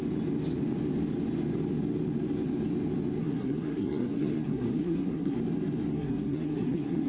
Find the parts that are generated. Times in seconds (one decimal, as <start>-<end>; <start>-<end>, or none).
3.2-5.4; 5.9-7.1